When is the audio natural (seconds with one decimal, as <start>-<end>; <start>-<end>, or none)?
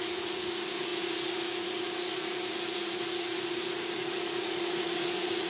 none